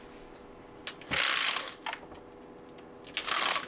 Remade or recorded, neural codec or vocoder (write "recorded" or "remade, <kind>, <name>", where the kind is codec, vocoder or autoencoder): recorded